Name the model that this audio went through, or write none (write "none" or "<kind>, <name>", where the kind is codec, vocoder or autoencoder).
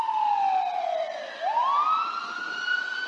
none